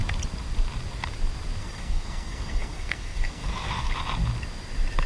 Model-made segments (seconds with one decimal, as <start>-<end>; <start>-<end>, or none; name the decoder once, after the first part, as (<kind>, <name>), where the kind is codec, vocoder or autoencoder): 1.6-3.9 (codec, SNAC)